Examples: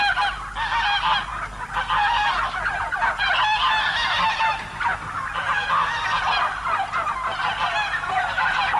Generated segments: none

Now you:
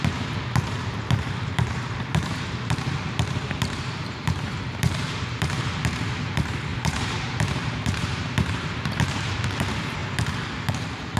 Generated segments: 0.0-10.0 (vocoder, BigVGAN v2); 10.7-11.2